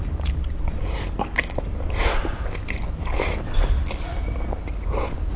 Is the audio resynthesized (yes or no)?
no